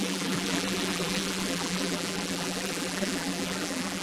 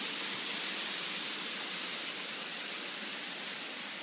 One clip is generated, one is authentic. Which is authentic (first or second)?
second